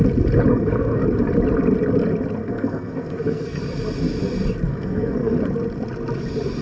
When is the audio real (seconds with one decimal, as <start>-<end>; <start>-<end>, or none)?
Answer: 0.0-0.5; 1.0-2.4; 3.6-4.7; 5.4-6.6